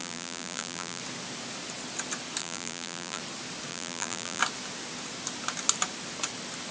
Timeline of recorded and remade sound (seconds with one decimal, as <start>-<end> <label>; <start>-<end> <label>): 0.0-1.0 remade; 1.0-2.4 recorded; 2.4-3.2 remade; 3.2-3.7 recorded; 3.7-4.4 remade; 4.4-6.7 recorded